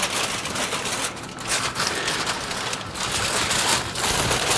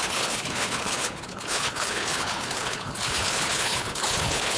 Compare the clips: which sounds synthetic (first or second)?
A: second